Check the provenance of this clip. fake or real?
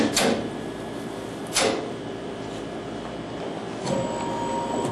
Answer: real